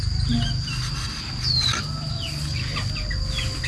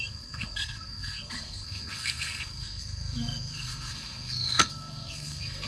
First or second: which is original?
first